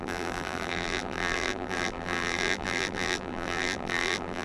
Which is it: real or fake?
fake